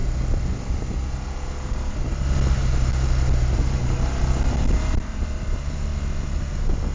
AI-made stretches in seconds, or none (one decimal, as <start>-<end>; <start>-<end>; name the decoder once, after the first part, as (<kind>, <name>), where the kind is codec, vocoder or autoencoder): none